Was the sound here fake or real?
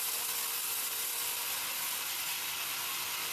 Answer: real